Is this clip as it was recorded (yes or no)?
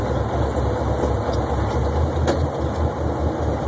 yes